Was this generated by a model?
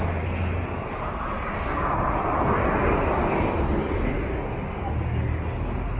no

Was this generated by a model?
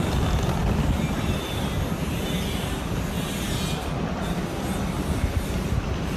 no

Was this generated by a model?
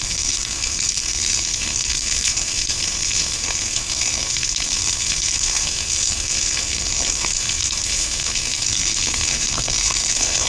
yes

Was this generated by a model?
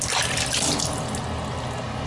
no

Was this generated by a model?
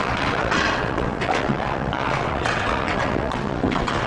yes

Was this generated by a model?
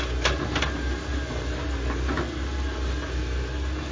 no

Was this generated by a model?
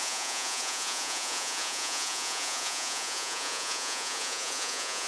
yes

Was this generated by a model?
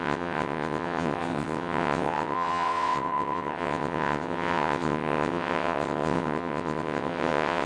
yes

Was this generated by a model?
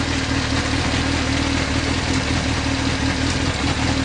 no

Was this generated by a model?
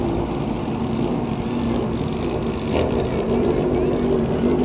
no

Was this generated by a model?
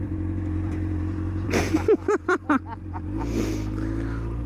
yes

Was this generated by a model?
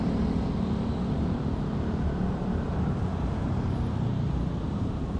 yes